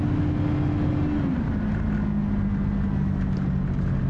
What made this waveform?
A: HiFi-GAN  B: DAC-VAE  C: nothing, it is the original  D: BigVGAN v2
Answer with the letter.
C